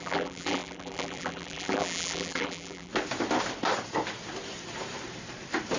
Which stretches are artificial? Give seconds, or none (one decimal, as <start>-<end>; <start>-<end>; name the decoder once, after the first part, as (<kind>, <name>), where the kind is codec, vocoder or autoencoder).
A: 0.0-2.9 (vocoder, BigVGAN v2)